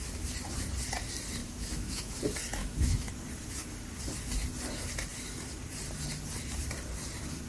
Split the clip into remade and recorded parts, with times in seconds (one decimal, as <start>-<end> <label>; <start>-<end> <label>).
0.0-1.4 recorded; 1.4-2.2 remade; 2.2-2.6 recorded; 2.6-3.1 remade; 3.1-7.5 recorded